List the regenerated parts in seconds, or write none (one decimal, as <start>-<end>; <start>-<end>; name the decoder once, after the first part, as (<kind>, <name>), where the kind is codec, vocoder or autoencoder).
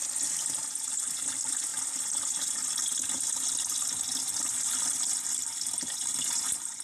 none